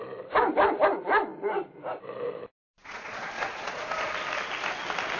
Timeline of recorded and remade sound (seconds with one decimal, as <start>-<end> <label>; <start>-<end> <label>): 0.0-2.8 recorded; 2.8-4.1 remade; 4.1-5.2 recorded